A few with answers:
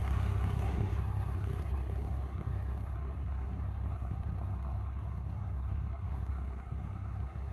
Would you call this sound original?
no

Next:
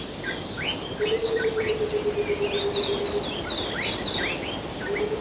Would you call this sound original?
yes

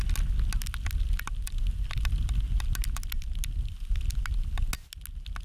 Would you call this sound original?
yes